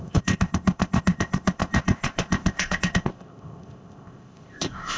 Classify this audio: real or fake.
fake